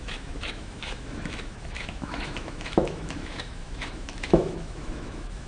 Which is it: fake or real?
fake